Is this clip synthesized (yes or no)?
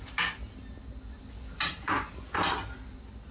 no